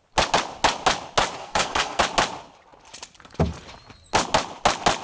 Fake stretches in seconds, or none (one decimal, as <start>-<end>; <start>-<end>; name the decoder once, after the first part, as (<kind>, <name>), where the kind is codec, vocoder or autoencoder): 1.4-2.0 (codec, SNAC)